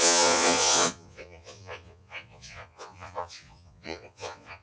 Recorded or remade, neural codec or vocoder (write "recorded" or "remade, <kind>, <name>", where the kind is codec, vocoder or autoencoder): remade, vocoder, Vocos